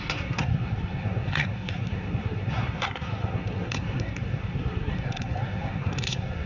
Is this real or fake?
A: fake